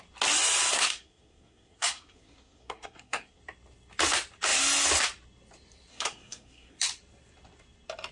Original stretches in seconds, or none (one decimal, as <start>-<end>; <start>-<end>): 0.0-0.7; 3.4-5.9; 6.8-8.1